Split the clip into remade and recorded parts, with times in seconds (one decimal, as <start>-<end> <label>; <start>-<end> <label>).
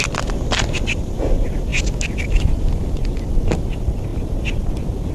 0.0-5.1 recorded